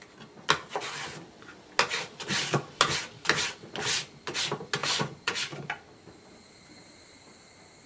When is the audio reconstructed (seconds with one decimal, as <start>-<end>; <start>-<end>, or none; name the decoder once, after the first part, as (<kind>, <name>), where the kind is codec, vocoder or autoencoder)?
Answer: 4.8-5.4 (vocoder, Vocos)